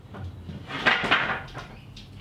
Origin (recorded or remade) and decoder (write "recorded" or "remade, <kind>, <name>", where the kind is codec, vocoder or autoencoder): recorded